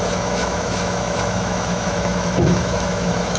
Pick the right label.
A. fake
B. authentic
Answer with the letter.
A